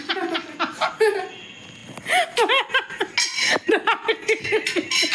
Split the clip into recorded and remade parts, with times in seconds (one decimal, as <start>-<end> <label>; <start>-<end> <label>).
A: 0.0-5.1 recorded